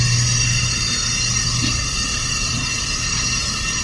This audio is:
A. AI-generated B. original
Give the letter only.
B